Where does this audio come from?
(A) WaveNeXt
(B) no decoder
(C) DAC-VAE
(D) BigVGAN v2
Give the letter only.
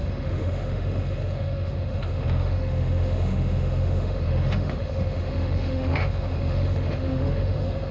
C